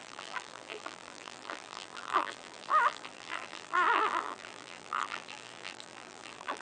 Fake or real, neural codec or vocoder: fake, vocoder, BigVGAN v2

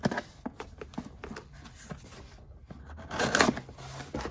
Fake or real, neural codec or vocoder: real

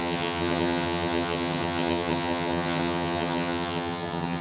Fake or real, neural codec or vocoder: fake, vocoder, HiFi-GAN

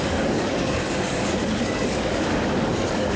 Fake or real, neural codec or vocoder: fake, codec, DAC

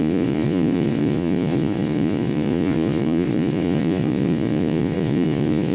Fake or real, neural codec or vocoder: fake, vocoder, Vocos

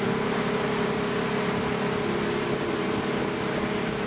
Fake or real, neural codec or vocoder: real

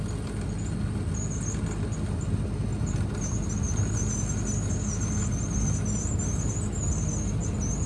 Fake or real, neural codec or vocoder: real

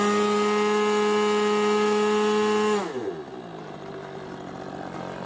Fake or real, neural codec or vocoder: real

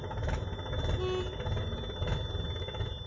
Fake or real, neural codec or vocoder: real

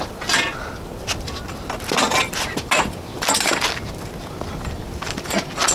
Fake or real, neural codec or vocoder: real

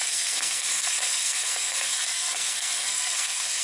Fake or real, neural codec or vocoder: fake, codec, SNAC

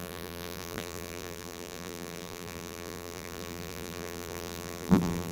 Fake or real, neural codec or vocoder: fake, vocoder, BigVGAN v2